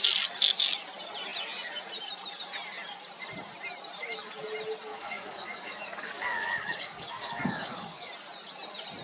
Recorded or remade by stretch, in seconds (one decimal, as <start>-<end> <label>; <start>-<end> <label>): 0.0-4.9 recorded; 4.9-8.1 remade; 8.1-9.0 recorded